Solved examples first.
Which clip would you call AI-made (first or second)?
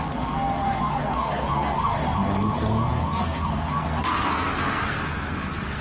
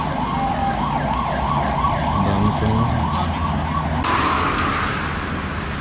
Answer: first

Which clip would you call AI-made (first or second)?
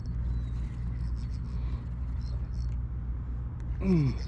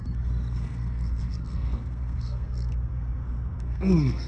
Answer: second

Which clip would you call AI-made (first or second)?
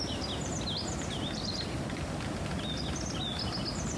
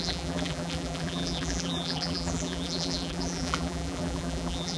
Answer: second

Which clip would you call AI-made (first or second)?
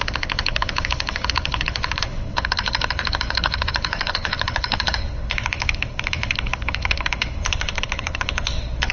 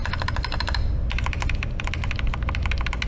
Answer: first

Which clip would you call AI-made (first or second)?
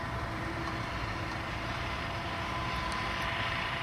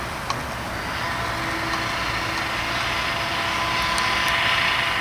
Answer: first